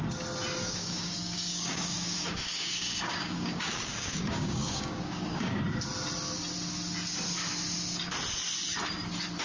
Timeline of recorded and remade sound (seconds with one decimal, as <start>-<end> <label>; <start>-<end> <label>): 0.0-0.6 recorded; 0.6-5.6 remade; 5.6-9.4 recorded